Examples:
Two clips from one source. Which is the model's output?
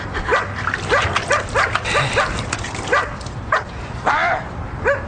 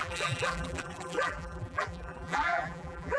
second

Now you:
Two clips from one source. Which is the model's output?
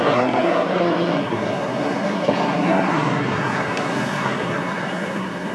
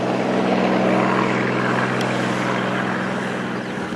first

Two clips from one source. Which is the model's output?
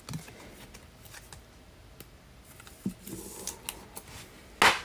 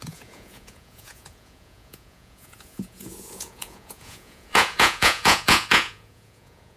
second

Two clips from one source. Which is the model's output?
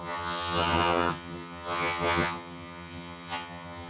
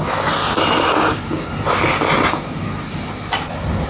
first